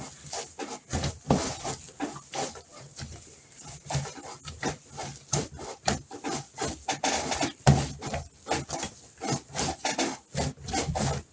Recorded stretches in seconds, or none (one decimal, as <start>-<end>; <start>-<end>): 0.0-11.3